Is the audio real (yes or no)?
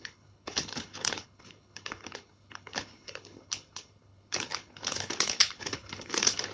no